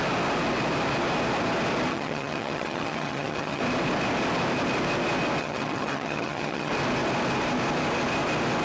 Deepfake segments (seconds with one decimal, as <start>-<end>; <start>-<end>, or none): 1.9-3.6; 5.4-6.7